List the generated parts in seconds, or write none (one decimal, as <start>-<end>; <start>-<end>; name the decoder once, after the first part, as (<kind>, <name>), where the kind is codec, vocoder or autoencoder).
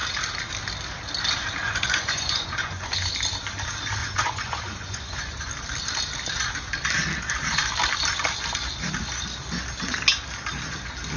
1.6-2.9 (vocoder, Vocos); 4.0-5.5